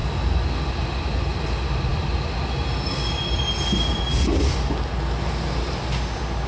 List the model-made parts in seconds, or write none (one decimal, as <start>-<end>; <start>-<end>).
none